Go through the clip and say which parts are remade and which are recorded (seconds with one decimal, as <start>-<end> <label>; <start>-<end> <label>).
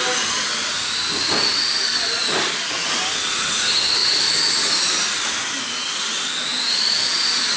0.0-7.6 recorded